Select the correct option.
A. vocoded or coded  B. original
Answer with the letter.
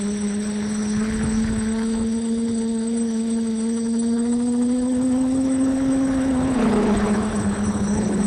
A